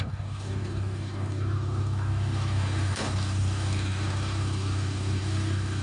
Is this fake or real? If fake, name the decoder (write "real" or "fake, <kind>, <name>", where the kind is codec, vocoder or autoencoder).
fake, codec, DAC